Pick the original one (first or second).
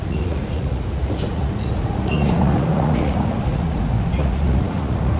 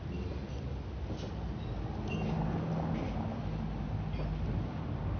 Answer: second